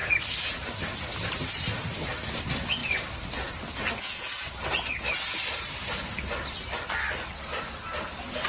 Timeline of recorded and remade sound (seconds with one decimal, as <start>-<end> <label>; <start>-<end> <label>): 0.0-8.5 recorded